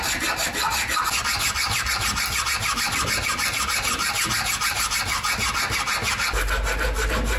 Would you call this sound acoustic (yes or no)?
yes